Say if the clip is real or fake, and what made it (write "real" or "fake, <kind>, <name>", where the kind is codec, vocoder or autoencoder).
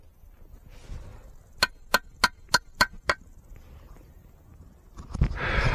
real